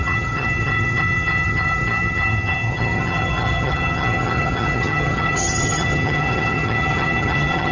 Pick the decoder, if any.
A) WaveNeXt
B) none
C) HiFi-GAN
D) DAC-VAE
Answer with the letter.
C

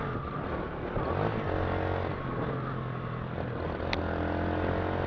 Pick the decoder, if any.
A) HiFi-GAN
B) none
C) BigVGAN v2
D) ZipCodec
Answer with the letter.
B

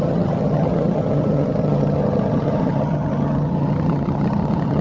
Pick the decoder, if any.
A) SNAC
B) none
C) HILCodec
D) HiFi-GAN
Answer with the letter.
D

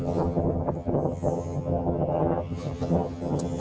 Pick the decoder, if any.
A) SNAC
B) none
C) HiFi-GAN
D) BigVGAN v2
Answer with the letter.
C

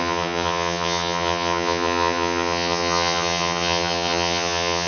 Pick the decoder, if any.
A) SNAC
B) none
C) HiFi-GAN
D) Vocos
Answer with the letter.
C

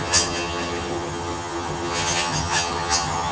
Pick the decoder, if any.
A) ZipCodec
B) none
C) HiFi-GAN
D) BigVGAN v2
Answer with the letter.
C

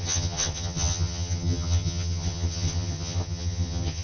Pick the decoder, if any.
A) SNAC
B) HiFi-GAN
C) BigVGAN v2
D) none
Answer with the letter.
B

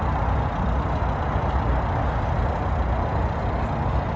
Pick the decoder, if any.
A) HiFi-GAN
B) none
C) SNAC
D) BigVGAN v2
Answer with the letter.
B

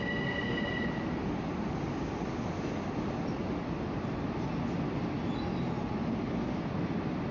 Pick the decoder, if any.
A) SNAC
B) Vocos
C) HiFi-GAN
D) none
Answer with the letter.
D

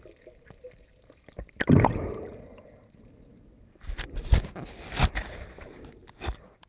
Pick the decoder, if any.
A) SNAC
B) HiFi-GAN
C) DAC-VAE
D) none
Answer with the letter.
D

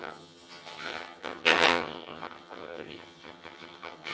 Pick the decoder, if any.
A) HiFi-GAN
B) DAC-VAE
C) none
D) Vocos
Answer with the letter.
A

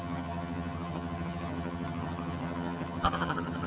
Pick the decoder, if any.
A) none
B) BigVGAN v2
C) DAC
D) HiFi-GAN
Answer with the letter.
D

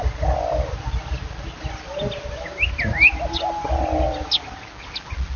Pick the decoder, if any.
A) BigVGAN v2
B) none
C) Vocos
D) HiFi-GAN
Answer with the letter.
B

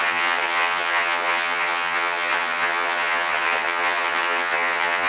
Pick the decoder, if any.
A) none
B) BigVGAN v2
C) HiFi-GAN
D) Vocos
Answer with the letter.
C